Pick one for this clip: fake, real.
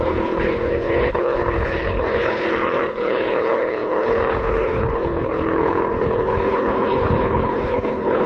fake